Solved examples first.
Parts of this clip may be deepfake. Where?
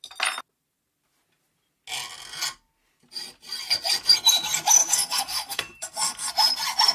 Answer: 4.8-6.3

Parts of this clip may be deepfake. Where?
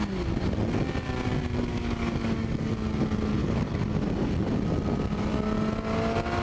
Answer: 1.7-2.7; 3.4-4.3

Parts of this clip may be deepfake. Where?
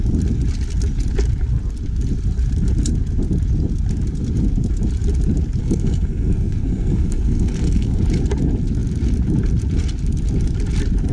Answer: 5.6-8.0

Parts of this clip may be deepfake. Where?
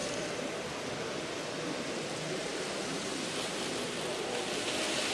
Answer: none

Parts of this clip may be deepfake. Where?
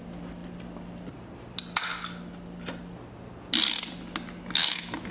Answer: 4.6-5.1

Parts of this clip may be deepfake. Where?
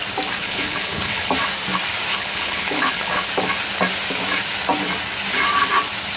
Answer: 0.4-1.3; 2.1-3.3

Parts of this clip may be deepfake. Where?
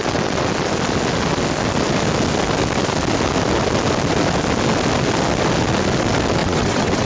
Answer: 6.4-7.1